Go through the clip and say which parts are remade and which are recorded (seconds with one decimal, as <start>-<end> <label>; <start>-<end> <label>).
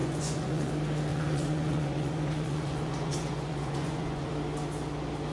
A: 0.0-0.7 remade; 0.7-1.1 recorded; 1.1-4.3 remade; 4.3-5.3 recorded